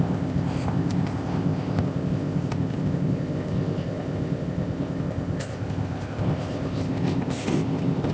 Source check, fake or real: fake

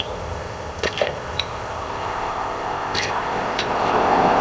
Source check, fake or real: fake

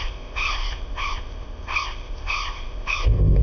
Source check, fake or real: fake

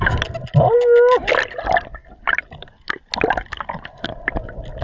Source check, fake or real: real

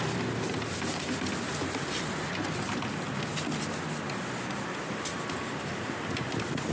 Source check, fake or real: real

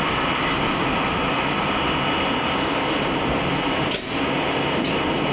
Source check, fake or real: real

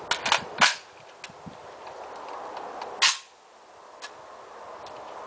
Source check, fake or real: real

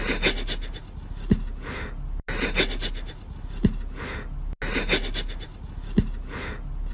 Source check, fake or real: real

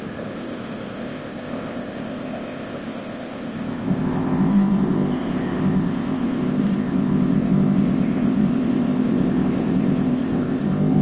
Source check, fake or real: fake